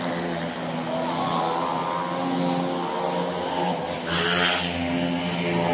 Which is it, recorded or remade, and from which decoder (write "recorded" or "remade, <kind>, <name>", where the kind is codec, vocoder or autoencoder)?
recorded